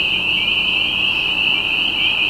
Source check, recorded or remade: recorded